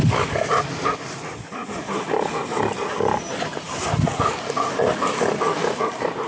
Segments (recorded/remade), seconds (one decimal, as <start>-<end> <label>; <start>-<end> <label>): 0.0-6.3 recorded